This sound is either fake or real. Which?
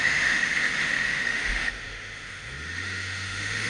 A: fake